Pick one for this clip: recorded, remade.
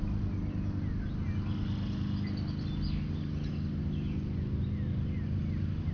recorded